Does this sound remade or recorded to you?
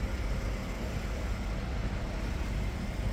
recorded